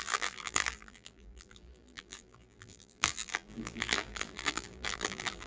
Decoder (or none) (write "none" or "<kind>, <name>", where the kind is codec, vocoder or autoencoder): vocoder, BigVGAN v2